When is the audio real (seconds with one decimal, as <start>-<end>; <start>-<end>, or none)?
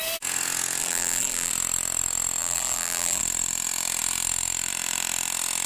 0.0-0.8; 1.5-2.4; 3.2-5.7